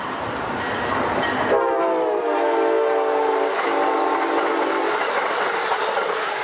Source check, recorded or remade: recorded